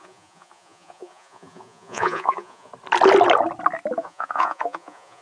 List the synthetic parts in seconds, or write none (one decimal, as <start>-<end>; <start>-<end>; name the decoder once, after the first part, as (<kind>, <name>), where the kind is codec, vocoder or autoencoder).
0.0-2.7 (vocoder, Vocos); 4.0-5.2